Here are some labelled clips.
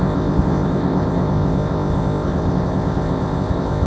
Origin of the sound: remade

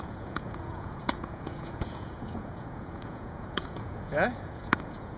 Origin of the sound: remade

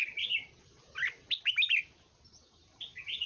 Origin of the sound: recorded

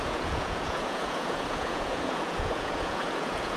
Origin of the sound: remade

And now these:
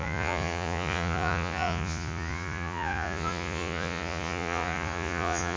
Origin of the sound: remade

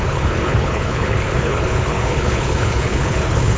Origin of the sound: remade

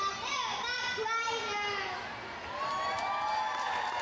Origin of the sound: recorded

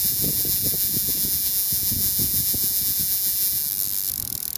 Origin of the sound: recorded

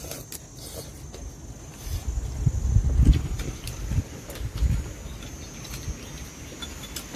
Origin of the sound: recorded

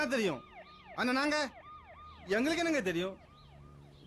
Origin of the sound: recorded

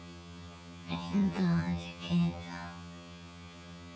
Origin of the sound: remade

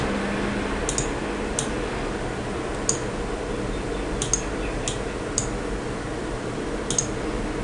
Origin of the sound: recorded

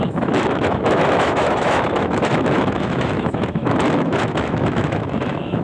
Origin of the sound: remade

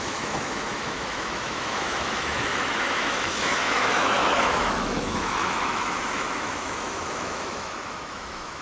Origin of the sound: remade